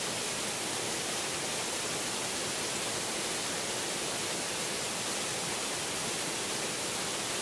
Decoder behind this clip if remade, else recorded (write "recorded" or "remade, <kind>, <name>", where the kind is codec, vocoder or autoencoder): recorded